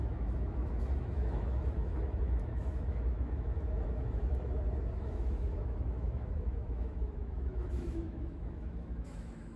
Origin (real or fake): fake